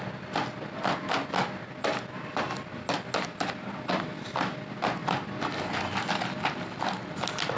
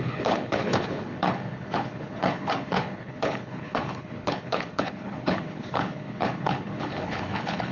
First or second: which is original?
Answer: first